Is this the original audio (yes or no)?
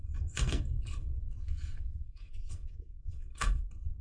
no